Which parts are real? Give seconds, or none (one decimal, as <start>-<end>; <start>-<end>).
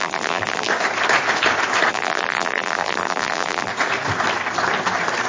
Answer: 0.7-1.9; 3.7-5.3